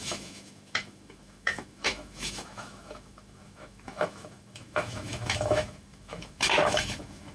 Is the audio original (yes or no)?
no